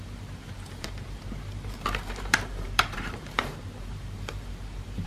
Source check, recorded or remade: remade